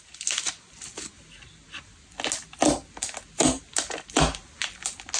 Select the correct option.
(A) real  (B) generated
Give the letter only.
A